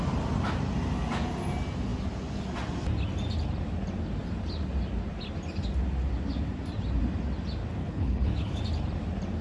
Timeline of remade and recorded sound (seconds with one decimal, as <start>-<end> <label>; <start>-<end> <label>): 0.0-7.8 recorded; 7.8-8.6 remade; 8.6-9.4 recorded